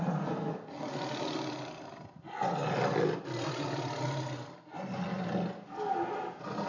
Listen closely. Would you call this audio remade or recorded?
recorded